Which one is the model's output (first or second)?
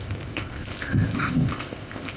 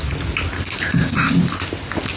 first